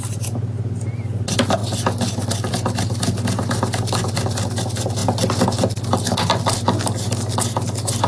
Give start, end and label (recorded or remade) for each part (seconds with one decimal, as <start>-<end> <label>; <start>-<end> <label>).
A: 0.0-8.1 recorded